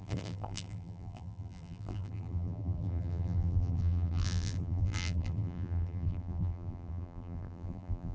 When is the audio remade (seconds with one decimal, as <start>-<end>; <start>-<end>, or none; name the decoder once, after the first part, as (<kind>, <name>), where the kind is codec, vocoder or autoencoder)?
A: 0.0-8.1 (vocoder, BigVGAN v2)